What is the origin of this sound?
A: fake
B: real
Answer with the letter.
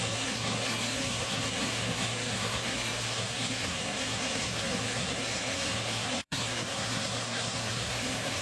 A